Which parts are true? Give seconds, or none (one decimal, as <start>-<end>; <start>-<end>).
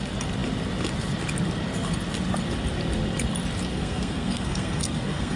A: 0.0-3.7